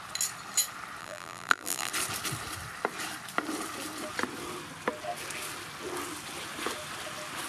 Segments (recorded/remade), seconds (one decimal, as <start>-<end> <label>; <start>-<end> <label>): 0.0-1.0 recorded; 1.0-1.9 remade; 1.9-7.5 recorded